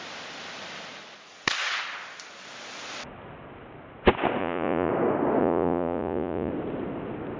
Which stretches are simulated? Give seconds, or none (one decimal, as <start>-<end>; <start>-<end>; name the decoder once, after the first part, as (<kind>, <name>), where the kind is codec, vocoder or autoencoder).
4.4-4.9 (vocoder, Vocos); 5.4-6.5